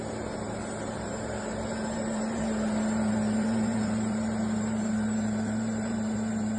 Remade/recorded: remade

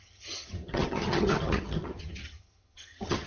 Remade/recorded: remade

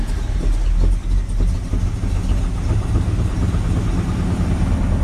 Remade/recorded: recorded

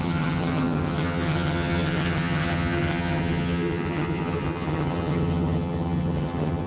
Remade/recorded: remade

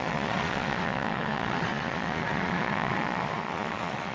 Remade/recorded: remade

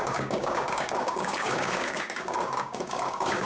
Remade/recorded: remade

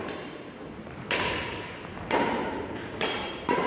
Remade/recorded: remade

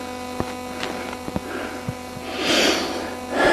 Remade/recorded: recorded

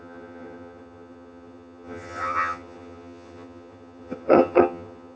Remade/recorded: remade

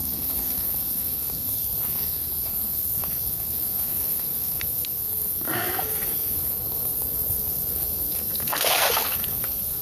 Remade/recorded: remade